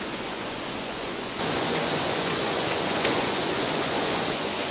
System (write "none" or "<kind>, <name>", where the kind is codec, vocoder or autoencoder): vocoder, Vocos